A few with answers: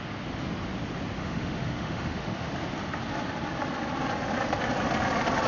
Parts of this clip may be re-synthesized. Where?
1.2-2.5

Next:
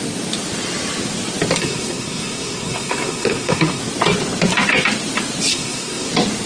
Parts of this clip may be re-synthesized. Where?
1.6-3.8; 5.5-6.1

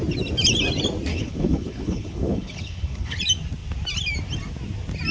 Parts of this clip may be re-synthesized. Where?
1.1-3.2

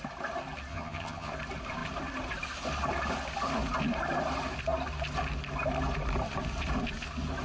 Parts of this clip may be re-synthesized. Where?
0.7-1.3